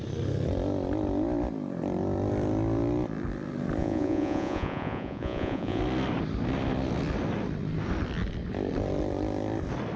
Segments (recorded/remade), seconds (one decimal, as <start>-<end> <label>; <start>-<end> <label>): 0.0-3.8 recorded; 3.8-5.8 remade; 5.8-10.0 recorded